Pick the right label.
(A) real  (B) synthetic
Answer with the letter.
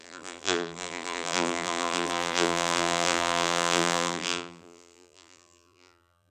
B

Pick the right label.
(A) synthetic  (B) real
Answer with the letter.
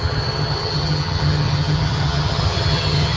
A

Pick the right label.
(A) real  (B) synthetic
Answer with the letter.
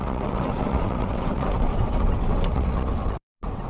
B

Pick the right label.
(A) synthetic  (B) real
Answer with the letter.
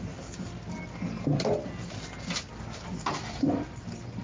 B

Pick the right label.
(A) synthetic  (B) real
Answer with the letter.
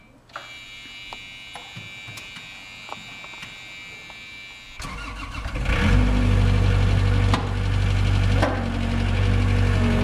B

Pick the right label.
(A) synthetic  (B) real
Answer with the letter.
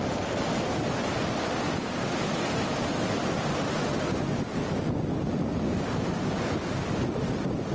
B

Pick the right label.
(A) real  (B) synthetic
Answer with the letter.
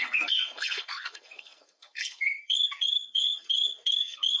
B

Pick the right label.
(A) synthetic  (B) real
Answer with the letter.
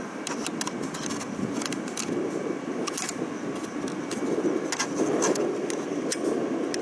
B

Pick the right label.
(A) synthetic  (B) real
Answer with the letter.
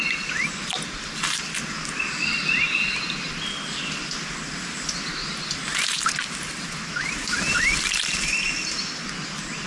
B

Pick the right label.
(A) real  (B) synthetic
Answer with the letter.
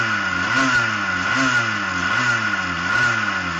A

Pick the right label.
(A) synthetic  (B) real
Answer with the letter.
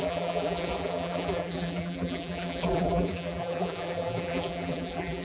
A